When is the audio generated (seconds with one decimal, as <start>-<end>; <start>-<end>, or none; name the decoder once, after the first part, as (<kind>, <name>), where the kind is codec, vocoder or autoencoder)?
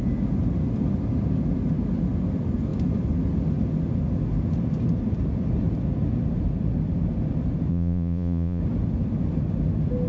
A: 7.7-8.6 (vocoder, Vocos)